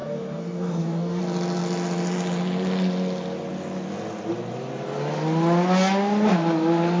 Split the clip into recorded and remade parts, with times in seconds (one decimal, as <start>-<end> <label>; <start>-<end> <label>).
0.0-1.2 remade; 1.2-7.0 recorded